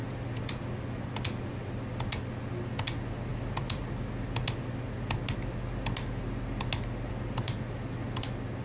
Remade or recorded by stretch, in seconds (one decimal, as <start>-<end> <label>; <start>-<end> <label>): 0.0-0.6 remade; 0.6-3.3 recorded; 3.3-3.8 remade; 3.8-8.6 recorded